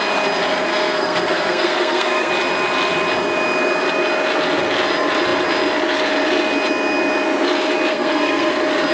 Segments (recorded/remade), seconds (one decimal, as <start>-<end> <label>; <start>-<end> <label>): 0.0-0.7 recorded; 0.7-2.3 remade; 2.3-7.9 recorded; 7.9-8.5 remade; 8.5-8.9 recorded